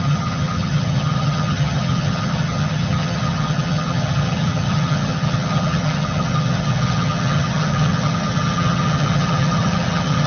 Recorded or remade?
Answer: remade